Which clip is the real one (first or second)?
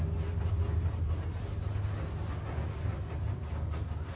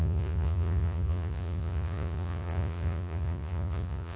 first